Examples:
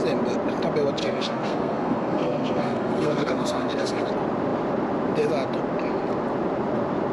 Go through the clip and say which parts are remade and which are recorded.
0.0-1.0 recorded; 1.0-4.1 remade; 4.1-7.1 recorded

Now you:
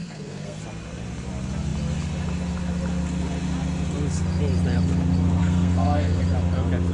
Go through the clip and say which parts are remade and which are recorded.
0.0-0.6 remade; 0.6-5.4 recorded; 5.4-6.2 remade; 6.2-6.9 recorded

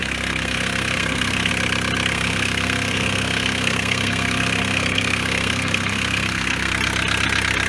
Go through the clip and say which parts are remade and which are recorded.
0.0-1.5 remade; 1.5-2.1 recorded; 2.1-6.7 remade; 6.7-7.7 recorded

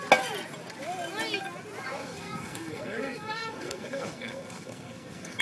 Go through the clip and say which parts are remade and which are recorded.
0.0-2.0 recorded; 2.0-5.4 remade

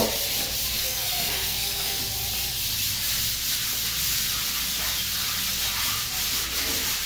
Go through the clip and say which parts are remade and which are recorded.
0.0-0.8 recorded; 0.8-2.0 remade; 2.0-7.1 recorded

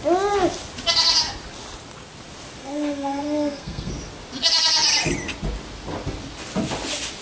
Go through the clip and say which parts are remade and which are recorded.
0.0-2.6 recorded; 2.6-3.9 remade; 3.9-7.2 recorded